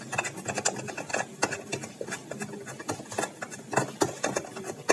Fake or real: real